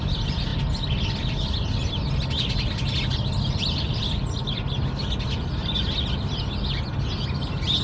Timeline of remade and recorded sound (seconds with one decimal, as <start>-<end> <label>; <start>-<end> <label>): 0.0-7.8 recorded